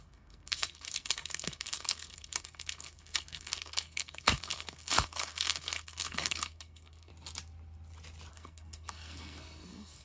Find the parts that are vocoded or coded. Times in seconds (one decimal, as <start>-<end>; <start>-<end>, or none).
0.0-7.1; 8.3-10.0